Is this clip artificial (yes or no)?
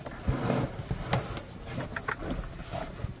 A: no